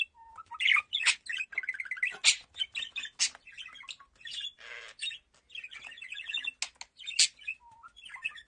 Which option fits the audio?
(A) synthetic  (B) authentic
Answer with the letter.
B